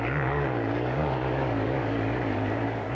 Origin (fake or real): fake